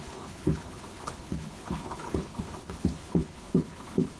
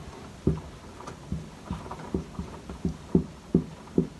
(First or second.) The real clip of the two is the second